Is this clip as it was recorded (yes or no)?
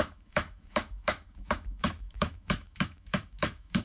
no